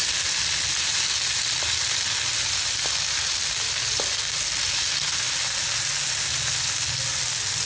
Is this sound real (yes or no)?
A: yes